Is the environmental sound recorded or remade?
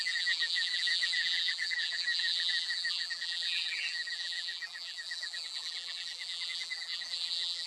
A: remade